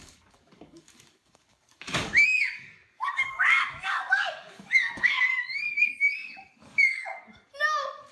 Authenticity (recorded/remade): remade